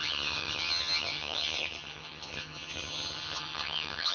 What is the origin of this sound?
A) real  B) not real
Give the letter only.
B